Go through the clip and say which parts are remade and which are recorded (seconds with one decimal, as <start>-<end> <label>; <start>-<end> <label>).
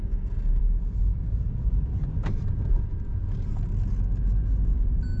0.0-1.0 recorded; 1.0-2.9 remade; 2.9-4.4 recorded; 4.4-5.2 remade